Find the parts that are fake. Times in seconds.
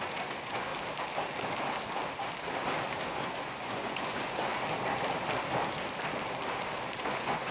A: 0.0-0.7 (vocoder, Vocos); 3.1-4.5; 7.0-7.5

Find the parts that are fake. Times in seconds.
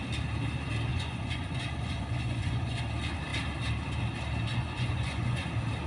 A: 0.9-2.8 (vocoder, Vocos); 4.5-5.5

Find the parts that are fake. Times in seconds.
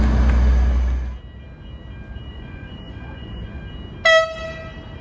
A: 2.3-3.6 (vocoder, Vocos)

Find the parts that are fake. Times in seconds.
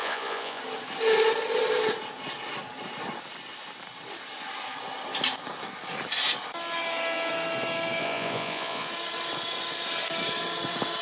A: 0.0-0.6 (vocoder, Vocos); 8.0-8.9